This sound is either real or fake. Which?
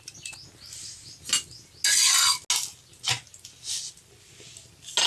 real